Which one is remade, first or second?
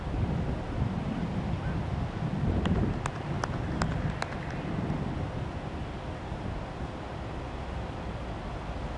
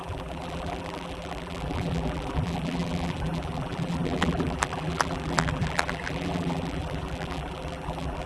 second